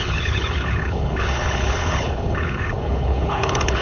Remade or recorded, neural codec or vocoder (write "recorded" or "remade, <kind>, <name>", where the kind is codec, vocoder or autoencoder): remade, codec, HILCodec